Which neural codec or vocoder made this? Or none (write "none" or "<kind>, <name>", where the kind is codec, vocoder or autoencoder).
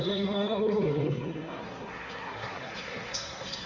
codec, SNAC